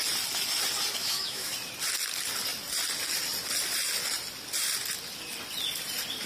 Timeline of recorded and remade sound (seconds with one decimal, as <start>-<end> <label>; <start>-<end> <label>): 0.0-1.0 recorded; 1.0-1.5 remade; 1.5-6.3 recorded